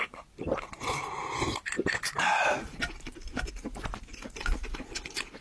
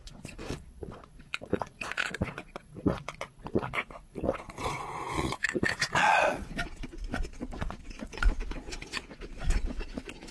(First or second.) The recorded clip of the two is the first